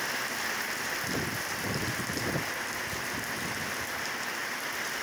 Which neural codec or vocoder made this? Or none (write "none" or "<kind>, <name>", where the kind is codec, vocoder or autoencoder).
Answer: none